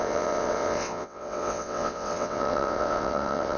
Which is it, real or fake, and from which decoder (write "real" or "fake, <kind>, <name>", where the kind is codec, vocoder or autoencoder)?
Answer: fake, vocoder, WaveNeXt